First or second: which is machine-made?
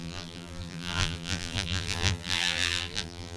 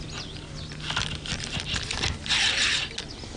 first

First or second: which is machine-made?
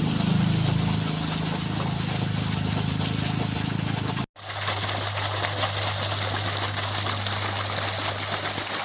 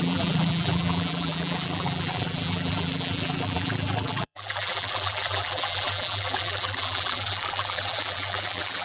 second